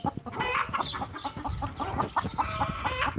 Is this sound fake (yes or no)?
no